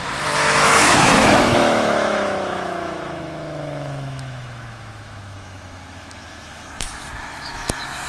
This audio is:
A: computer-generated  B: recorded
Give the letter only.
A